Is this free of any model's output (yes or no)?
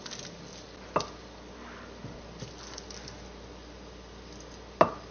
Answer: yes